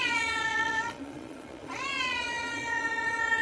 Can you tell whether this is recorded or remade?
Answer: remade